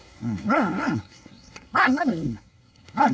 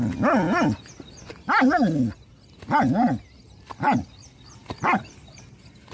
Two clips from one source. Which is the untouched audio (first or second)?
second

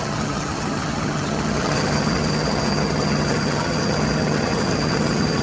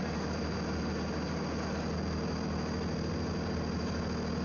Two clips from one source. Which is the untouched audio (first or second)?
second